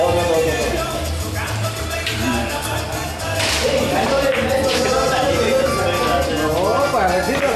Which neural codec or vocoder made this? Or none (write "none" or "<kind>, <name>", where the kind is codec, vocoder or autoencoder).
none